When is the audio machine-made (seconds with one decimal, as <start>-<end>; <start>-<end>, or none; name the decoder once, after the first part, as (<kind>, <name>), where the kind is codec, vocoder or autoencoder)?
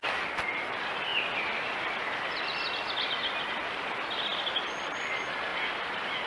none